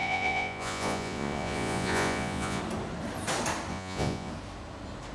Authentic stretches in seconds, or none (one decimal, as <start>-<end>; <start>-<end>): 2.6-3.7; 4.3-5.1